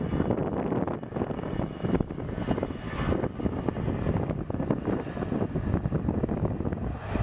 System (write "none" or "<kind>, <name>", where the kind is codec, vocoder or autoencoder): none